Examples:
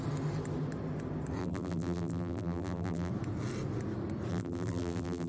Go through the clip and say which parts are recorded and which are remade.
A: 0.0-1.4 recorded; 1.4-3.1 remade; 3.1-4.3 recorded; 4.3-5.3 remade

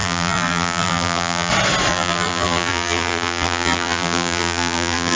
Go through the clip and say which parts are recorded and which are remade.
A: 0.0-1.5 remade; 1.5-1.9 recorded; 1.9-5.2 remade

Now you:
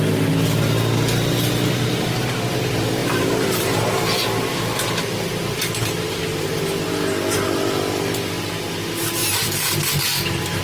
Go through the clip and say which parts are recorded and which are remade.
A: 0.0-3.0 recorded; 3.0-3.8 remade; 3.8-9.2 recorded; 9.2-10.0 remade; 10.0-10.6 recorded

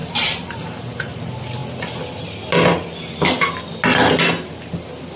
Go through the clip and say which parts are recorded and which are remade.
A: 0.0-1.2 remade; 1.2-5.2 recorded

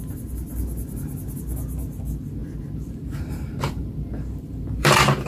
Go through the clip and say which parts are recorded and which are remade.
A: 0.0-2.4 recorded; 2.4-5.3 remade